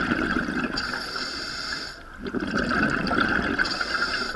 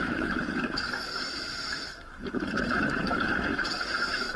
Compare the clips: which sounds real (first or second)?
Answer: first